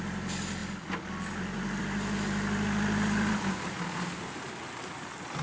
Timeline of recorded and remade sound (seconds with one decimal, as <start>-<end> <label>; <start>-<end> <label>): 0.0-5.4 recorded